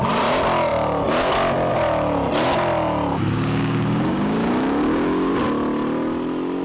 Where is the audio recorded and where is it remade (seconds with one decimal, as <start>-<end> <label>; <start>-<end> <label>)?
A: 0.0-3.1 recorded; 3.1-5.3 remade; 5.3-6.6 recorded